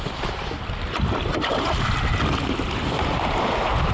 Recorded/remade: recorded